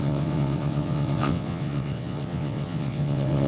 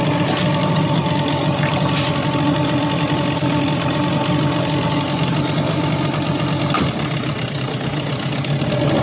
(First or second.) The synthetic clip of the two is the first